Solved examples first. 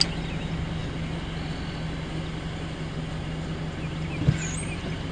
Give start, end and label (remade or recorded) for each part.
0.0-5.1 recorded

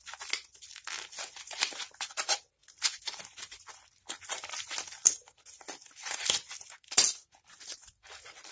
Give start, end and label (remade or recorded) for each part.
0.0-8.5 recorded

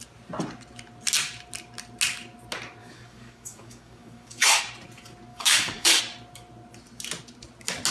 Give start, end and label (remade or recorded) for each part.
0.0-2.8 recorded; 2.8-4.6 remade; 4.6-5.3 recorded; 5.3-6.0 remade; 6.0-7.9 recorded

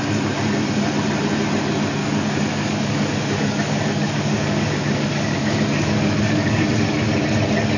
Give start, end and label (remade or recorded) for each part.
0.0-2.0 recorded; 2.0-6.7 remade; 6.7-7.8 recorded

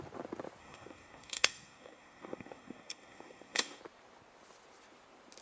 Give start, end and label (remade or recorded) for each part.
0.0-0.6 recorded; 0.6-3.8 remade; 3.8-5.4 recorded

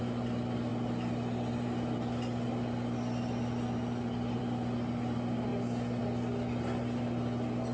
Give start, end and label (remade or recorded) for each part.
0.0-7.7 recorded

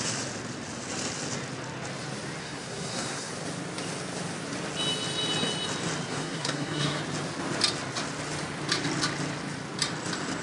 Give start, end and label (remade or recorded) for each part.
0.0-2.4 recorded; 2.4-3.3 remade; 3.3-6.1 recorded; 6.1-7.0 remade; 7.0-10.4 recorded